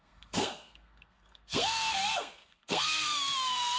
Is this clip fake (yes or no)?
yes